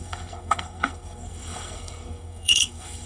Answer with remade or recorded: remade